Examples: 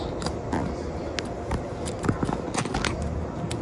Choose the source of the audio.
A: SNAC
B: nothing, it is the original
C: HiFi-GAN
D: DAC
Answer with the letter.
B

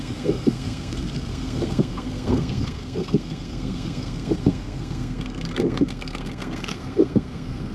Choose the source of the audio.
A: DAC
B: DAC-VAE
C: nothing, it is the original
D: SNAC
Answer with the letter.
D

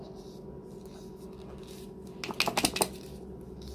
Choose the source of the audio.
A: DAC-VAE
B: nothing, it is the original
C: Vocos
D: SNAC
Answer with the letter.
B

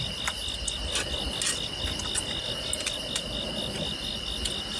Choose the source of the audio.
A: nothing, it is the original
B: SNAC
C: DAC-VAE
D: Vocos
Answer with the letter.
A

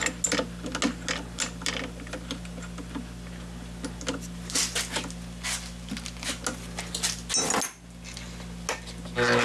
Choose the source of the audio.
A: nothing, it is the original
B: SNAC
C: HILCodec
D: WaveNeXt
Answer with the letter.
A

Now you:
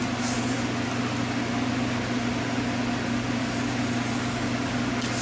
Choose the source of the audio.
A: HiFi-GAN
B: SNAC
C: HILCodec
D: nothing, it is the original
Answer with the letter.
D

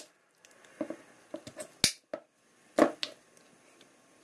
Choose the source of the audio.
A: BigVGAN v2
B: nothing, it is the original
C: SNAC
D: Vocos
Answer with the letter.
B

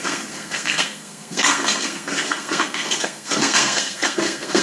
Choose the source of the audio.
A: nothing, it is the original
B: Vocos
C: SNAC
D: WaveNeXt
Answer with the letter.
C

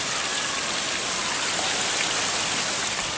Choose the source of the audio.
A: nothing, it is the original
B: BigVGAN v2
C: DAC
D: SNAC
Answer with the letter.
A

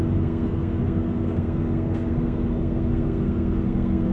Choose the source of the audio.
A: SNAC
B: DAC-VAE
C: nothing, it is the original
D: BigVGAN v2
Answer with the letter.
A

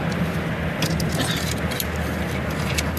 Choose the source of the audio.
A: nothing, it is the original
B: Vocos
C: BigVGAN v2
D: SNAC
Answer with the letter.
A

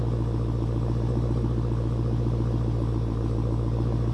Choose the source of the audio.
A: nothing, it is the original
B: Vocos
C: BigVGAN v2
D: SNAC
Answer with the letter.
A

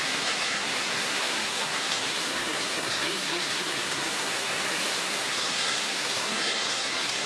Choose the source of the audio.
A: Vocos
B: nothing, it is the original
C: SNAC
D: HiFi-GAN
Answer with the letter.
C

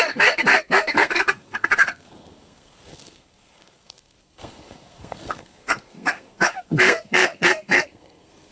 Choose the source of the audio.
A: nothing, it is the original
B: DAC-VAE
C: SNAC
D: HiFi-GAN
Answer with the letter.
C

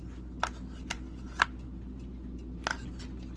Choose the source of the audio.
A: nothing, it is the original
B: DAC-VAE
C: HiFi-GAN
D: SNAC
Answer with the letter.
A